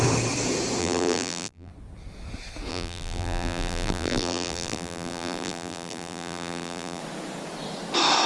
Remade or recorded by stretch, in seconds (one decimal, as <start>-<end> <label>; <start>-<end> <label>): 0.0-0.8 recorded; 0.8-1.7 remade; 1.7-2.7 recorded; 2.7-7.0 remade; 7.0-8.3 recorded